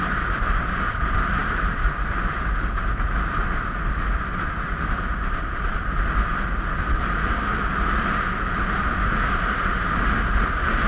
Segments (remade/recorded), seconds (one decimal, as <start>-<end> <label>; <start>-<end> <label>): 0.0-10.9 recorded